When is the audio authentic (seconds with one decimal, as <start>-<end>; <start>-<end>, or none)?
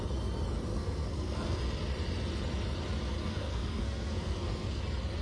0.0-0.7; 1.6-3.2; 4.8-5.2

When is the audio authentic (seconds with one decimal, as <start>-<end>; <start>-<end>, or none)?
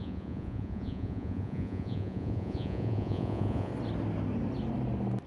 3.7-5.3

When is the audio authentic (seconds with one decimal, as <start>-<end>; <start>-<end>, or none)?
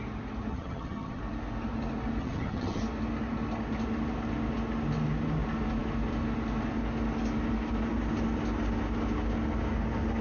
0.0-0.5; 1.2-2.2; 2.8-10.2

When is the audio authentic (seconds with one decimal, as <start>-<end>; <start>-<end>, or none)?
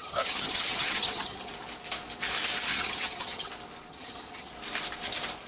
1.5-2.7; 3.5-3.9; 4.5-5.5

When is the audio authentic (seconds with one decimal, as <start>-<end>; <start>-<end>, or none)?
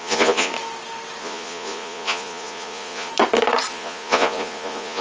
0.5-1.2; 3.1-3.7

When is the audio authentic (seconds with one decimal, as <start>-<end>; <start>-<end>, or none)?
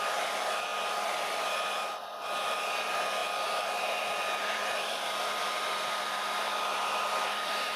none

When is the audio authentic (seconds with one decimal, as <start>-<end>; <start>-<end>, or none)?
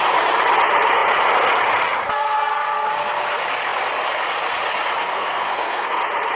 0.0-5.1; 6.0-6.4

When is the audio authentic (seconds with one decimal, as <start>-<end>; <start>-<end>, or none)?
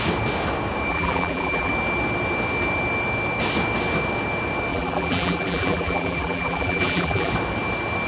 0.0-0.9; 1.7-4.7; 7.3-8.1